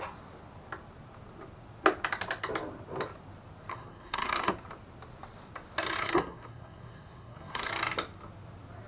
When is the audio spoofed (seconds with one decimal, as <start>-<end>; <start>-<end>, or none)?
3.7-4.5; 6.0-7.7